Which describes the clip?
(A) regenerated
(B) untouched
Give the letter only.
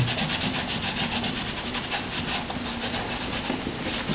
B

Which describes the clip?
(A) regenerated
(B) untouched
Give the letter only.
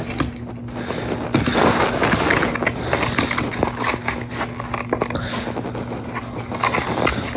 B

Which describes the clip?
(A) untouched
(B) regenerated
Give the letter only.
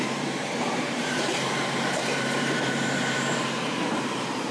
B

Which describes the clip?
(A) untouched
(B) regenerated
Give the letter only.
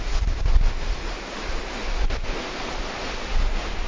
A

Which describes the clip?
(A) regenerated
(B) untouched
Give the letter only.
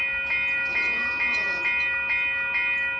B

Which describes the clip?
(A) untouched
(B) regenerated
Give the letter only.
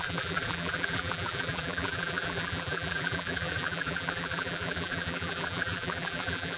B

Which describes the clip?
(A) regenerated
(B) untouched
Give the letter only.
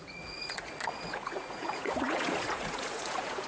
A